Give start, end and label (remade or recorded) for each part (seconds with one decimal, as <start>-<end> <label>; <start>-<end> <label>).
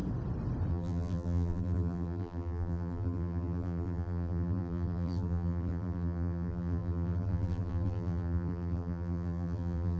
0.0-0.7 recorded; 0.7-10.0 remade